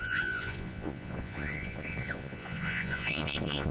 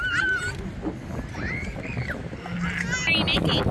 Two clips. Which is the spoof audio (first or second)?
first